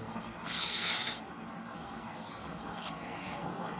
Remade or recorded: remade